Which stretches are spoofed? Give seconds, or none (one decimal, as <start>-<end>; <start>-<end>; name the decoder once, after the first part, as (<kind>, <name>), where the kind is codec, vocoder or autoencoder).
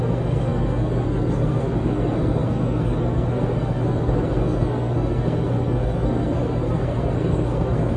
0.0-8.0 (codec, SNAC)